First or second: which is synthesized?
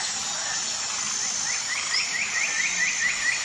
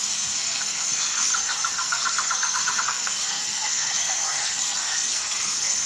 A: second